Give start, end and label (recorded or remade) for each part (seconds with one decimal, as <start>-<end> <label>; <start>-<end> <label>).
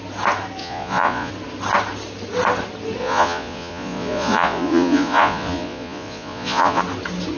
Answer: 0.0-0.6 recorded; 0.6-1.3 remade; 1.3-3.0 recorded; 3.0-6.8 remade; 6.8-7.4 recorded